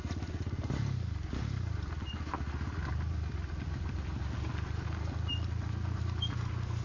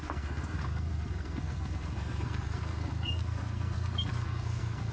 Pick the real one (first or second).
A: first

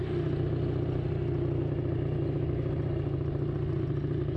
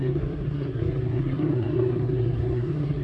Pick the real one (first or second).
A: first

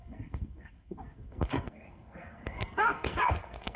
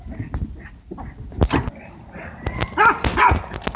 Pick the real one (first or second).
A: second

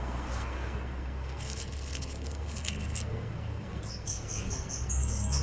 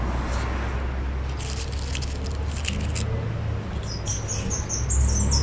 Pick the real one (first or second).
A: second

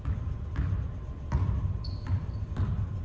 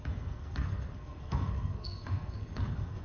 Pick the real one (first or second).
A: first